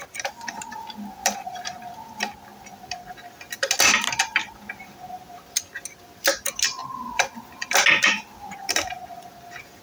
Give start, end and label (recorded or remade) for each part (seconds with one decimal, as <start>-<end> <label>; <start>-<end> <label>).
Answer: 0.0-9.8 recorded